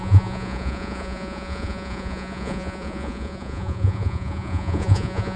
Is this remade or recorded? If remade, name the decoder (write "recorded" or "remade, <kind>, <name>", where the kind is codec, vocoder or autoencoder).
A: remade, vocoder, Vocos